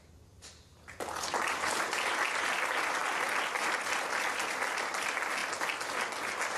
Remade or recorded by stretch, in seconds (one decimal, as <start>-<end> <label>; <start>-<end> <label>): 0.0-6.6 recorded